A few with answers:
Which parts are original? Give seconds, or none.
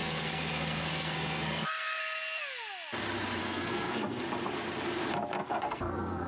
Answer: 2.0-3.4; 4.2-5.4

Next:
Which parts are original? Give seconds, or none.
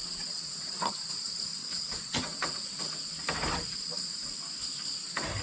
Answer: 0.9-1.6; 2.8-5.4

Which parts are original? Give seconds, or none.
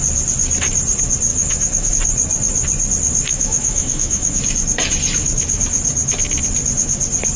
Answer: 0.0-1.3; 1.9-3.3; 4.4-7.4